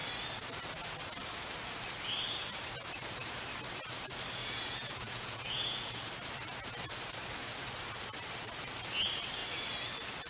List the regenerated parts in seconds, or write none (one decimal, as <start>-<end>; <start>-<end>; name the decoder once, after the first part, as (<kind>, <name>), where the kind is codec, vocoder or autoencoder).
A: 4.4-6.1 (vocoder, Vocos)